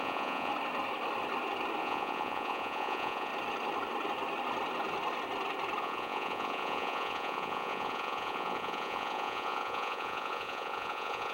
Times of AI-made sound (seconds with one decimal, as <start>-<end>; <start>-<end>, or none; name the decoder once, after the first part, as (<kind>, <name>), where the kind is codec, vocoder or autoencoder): 0.0-0.5 (vocoder, Vocos); 1.8-3.3; 5.8-11.3